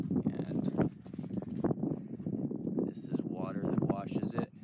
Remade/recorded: recorded